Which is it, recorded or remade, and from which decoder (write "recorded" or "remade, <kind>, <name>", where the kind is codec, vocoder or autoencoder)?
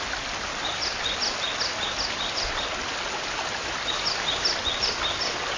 recorded